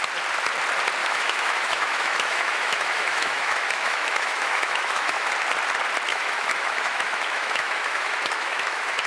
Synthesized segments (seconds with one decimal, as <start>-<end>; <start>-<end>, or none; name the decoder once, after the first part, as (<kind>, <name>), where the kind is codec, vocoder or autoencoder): 1.0-5.3 (autoencoder, DAC-VAE); 6.1-9.1